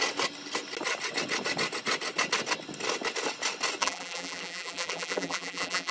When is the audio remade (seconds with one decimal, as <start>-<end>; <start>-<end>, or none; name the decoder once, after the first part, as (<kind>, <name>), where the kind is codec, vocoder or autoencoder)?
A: 3.8-5.9 (vocoder, BigVGAN v2)

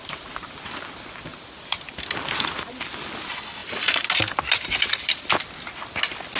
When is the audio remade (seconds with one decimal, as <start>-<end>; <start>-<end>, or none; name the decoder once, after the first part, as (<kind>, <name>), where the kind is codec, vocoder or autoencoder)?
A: none

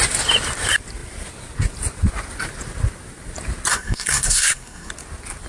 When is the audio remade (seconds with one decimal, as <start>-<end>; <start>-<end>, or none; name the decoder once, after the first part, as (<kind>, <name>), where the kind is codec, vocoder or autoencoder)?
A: 3.7-4.9 (codec, SNAC)

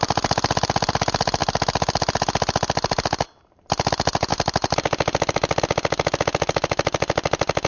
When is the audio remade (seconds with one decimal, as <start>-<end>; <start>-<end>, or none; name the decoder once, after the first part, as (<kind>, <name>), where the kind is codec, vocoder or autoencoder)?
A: none

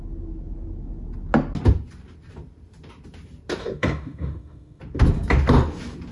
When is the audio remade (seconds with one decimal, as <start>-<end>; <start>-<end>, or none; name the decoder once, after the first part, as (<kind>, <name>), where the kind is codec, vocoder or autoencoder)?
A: 3.6-4.8 (autoencoder, DAC-VAE)

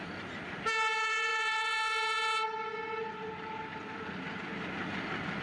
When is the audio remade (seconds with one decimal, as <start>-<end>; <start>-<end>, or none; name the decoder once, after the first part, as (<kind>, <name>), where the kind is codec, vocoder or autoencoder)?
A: none

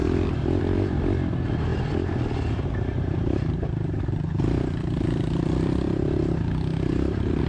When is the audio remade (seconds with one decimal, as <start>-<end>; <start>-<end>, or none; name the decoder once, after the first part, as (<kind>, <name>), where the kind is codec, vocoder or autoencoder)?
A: 1.7-6.2 (vocoder, BigVGAN v2)

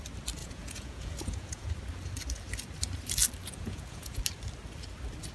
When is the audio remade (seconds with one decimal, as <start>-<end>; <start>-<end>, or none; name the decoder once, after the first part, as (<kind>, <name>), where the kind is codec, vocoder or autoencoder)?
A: 0.4-1.7 (vocoder, Vocos); 3.4-4.2